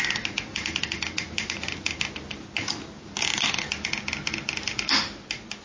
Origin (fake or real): real